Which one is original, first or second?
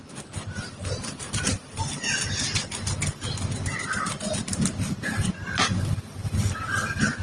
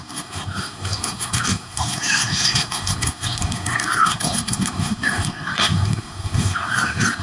first